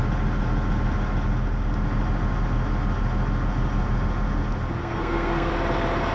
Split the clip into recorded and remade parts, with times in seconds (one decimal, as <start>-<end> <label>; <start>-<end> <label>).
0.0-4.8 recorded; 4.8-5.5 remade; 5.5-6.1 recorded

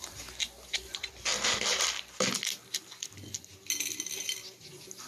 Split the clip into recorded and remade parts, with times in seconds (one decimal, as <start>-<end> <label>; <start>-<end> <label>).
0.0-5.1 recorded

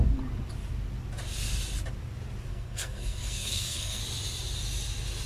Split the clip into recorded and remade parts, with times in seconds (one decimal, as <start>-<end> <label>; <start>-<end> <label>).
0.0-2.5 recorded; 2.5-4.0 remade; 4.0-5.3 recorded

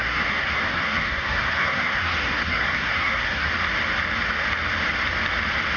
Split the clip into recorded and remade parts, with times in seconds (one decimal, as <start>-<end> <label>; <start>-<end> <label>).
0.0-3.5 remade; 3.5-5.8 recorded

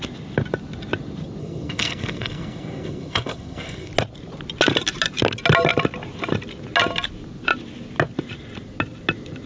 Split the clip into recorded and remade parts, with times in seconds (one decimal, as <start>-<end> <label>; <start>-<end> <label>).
0.0-1.4 recorded; 1.4-3.9 remade; 3.9-9.5 recorded